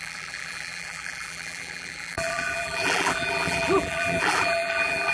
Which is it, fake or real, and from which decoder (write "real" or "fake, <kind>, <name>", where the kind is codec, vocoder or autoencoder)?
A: fake, vocoder, BigVGAN v2